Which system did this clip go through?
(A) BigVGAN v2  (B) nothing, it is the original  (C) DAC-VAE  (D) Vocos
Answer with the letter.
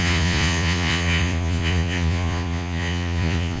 D